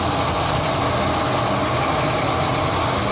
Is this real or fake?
real